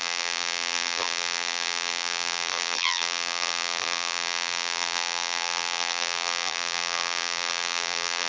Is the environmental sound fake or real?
fake